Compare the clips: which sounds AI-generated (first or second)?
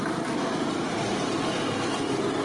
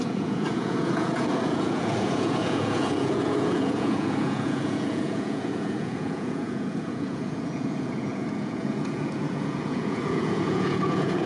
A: second